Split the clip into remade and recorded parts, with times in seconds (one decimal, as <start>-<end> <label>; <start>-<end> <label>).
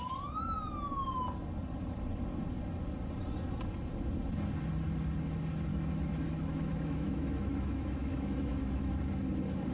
0.0-5.7 recorded; 5.7-9.0 remade; 9.0-9.7 recorded